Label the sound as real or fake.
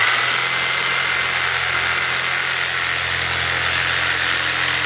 real